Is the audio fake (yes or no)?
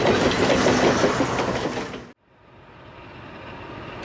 no